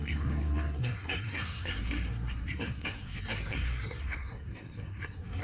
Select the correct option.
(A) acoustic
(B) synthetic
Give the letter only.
B